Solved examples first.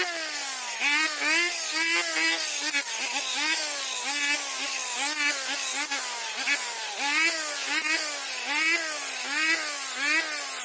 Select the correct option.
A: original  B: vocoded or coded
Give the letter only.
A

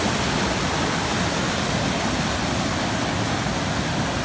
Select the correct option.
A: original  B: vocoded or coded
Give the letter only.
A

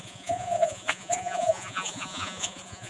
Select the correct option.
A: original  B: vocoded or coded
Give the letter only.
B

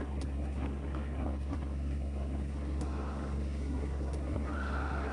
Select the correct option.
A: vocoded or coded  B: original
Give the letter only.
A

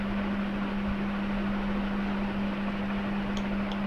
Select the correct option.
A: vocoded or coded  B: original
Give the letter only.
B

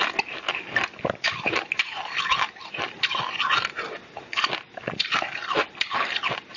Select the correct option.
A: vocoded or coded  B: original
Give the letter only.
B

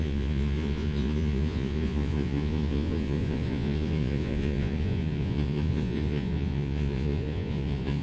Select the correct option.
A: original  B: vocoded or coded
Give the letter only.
B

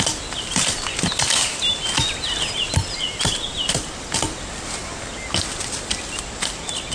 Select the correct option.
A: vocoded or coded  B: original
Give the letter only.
B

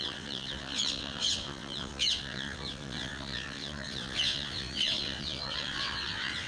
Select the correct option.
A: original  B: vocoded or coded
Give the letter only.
B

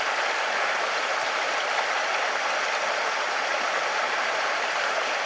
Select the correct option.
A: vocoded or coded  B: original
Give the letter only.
B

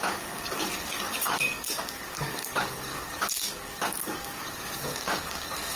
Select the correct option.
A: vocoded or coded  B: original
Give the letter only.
A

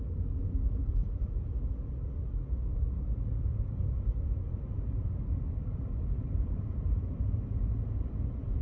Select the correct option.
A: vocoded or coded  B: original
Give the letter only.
A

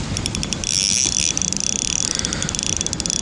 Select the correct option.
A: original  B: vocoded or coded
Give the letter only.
A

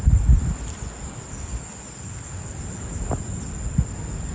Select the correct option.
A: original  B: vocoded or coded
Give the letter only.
A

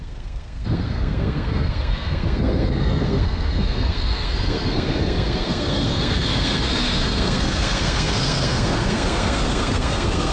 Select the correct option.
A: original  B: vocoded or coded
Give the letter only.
B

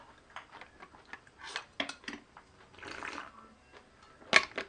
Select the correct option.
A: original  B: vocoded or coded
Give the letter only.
A